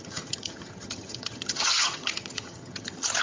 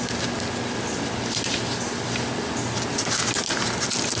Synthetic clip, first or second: first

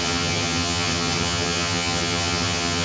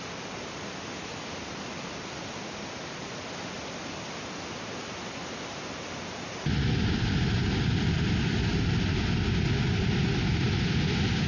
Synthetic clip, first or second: first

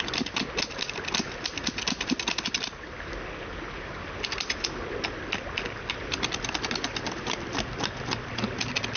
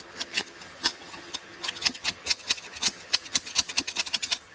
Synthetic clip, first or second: second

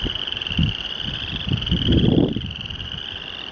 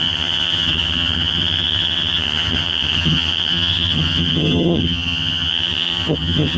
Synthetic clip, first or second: second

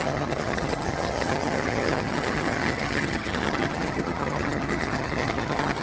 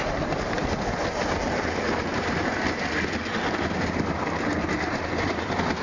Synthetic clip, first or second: first